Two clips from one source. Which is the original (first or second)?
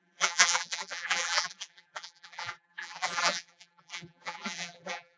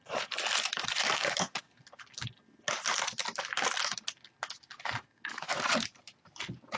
second